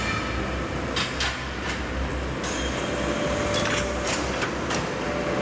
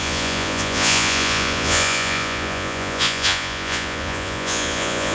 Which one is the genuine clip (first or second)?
first